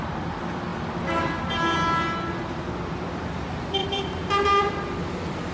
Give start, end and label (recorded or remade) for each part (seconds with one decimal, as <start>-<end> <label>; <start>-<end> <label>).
0.0-3.8 recorded; 3.8-5.0 remade; 5.0-5.5 recorded